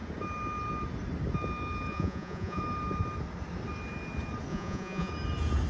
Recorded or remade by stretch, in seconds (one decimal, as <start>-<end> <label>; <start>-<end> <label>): 0.0-1.9 recorded; 1.9-2.6 remade; 2.6-4.5 recorded; 4.5-5.1 remade; 5.1-5.7 recorded